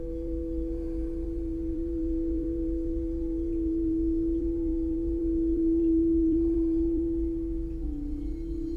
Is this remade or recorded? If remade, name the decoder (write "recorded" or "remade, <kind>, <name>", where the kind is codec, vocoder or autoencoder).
remade, vocoder, BigVGAN v2